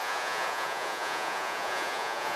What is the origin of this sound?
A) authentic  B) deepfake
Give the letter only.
B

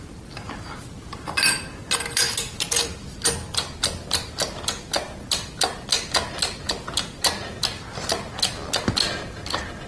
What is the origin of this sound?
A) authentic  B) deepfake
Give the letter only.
A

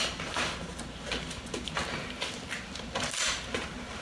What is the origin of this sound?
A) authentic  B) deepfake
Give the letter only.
A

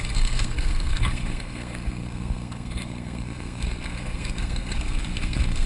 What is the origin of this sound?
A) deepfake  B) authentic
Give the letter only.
A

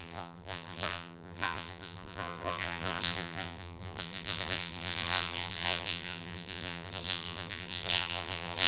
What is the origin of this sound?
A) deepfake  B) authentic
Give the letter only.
A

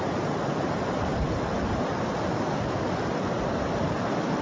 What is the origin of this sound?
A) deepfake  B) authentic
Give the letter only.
A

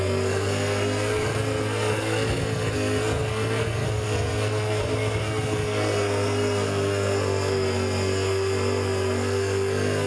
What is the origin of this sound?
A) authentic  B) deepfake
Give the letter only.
B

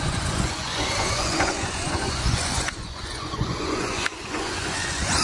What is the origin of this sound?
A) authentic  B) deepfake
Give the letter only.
B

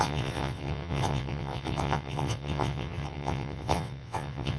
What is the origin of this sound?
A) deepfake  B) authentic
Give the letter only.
A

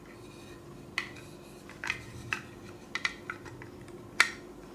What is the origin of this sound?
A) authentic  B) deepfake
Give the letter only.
A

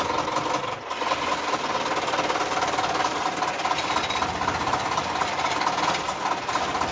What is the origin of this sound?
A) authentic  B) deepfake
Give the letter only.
A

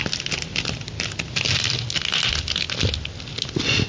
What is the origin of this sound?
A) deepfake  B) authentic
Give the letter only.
B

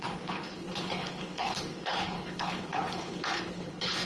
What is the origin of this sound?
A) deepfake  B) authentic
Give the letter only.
A